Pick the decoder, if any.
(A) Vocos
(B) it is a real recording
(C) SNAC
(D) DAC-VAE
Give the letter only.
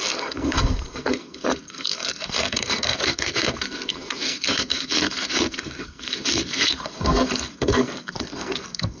C